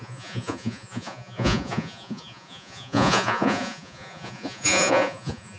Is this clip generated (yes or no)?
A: yes